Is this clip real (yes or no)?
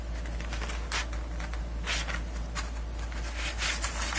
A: yes